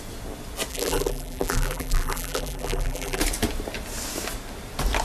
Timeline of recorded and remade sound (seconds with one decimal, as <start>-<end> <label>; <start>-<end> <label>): 0.0-0.7 recorded; 0.7-3.2 remade; 3.2-5.0 recorded